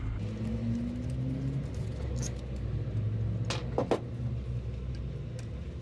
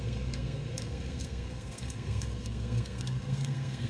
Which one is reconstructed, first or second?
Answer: second